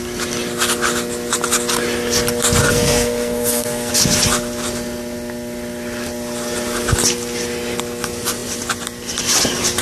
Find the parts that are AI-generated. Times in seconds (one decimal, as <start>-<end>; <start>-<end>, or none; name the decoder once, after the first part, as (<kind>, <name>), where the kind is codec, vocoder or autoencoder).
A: 2.6-3.9 (codec, SNAC)